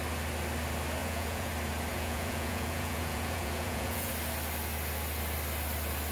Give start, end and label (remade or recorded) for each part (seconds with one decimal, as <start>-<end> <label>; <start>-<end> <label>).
0.0-1.0 recorded; 1.0-1.5 remade; 1.5-1.9 recorded; 1.9-4.1 remade; 4.1-6.1 recorded